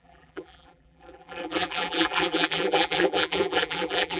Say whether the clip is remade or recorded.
remade